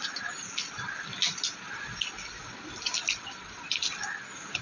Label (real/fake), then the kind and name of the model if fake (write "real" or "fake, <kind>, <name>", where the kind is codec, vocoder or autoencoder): real